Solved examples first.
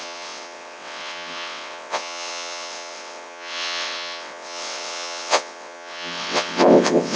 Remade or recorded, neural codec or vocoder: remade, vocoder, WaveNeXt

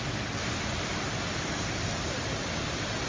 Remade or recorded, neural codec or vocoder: recorded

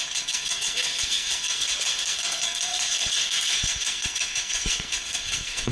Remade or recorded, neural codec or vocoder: remade, codec, SNAC